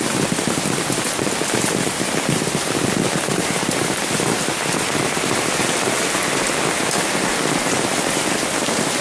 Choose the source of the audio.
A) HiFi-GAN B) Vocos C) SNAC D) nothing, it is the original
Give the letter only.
D